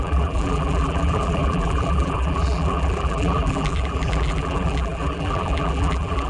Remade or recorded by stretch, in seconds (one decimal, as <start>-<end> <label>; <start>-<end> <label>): 0.0-6.3 remade